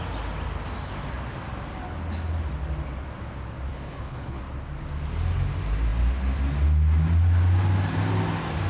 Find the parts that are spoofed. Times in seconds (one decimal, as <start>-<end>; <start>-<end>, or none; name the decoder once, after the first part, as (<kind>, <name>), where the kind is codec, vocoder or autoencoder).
3.7-4.4 (codec, HILCodec)